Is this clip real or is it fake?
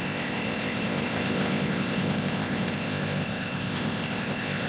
fake